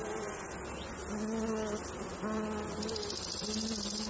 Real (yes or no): yes